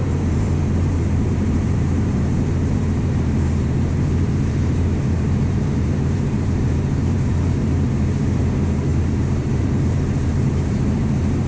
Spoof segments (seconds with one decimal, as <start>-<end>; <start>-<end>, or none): 0.0-11.5